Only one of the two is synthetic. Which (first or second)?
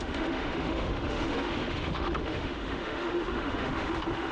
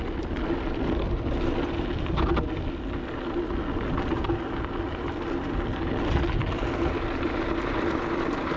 first